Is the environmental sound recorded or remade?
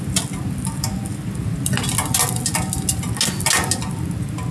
recorded